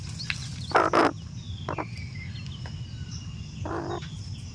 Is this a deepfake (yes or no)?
no